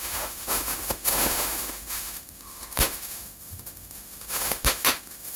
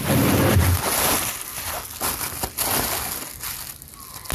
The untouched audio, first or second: second